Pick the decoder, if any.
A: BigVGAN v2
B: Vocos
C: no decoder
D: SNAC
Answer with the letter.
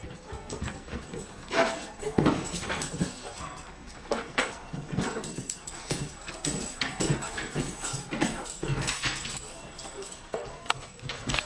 D